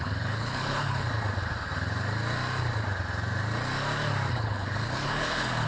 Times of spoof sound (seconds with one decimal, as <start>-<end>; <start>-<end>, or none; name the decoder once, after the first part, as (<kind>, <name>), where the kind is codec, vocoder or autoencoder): 0.0-1.0 (codec, HILCodec); 4.3-5.7